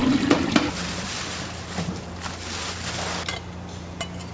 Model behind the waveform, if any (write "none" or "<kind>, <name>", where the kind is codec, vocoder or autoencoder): none